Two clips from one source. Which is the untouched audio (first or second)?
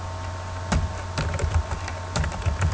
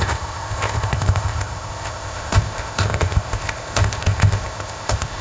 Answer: first